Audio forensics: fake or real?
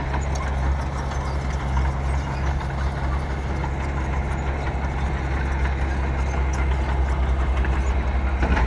real